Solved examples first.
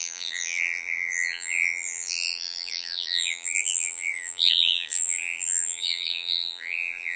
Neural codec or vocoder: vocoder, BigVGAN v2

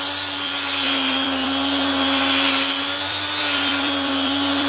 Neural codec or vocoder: vocoder, BigVGAN v2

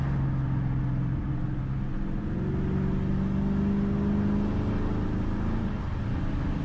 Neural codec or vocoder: none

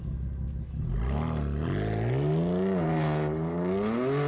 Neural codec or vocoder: none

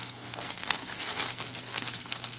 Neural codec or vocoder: codec, SNAC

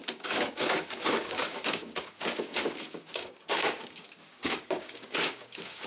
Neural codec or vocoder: codec, DAC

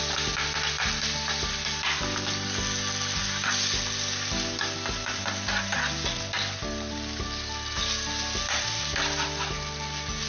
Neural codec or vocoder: none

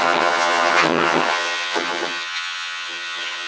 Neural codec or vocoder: vocoder, HiFi-GAN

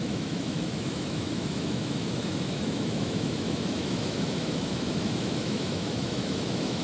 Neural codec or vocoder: autoencoder, DAC-VAE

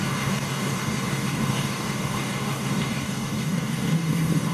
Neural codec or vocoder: codec, DAC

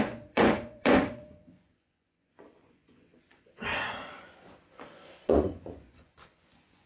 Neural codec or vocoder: vocoder, Vocos